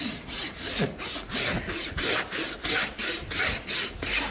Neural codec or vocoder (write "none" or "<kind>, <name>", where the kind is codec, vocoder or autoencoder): none